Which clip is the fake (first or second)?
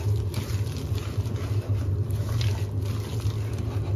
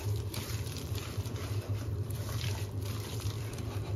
second